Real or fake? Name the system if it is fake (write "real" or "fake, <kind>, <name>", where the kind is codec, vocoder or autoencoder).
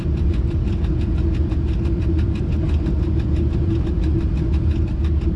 real